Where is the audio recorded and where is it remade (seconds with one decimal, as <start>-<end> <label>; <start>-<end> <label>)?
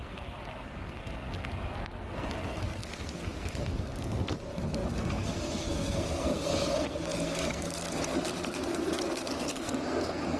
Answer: 0.0-10.4 remade